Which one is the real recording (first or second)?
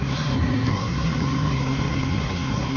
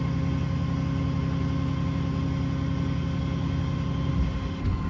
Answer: second